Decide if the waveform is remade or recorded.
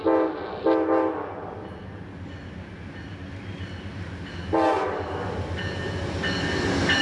recorded